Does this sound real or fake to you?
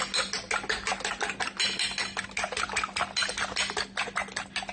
real